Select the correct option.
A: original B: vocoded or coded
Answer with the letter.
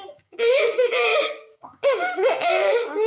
B